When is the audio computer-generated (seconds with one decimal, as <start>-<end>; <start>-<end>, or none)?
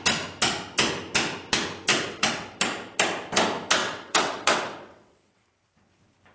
1.9-2.6; 3.8-5.4